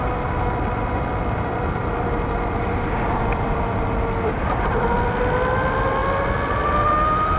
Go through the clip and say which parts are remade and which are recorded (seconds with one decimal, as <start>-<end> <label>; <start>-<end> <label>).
0.0-7.4 recorded